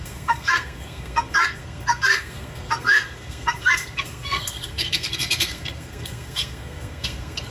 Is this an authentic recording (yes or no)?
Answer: no